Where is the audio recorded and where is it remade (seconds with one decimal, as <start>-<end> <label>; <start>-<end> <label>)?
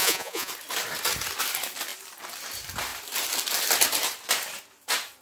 0.0-0.5 remade; 0.5-5.2 recorded